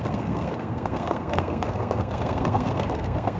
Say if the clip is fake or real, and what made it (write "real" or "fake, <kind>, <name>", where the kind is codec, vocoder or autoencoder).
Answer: fake, codec, SNAC